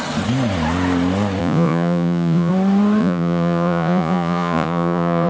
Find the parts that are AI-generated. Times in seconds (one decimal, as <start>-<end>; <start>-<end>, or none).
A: 1.4-2.5; 3.0-5.3